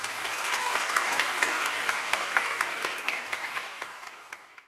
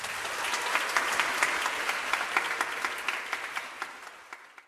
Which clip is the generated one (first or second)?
first